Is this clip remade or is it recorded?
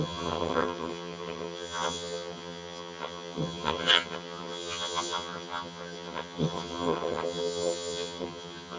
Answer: remade